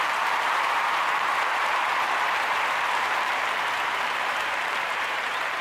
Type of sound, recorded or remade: remade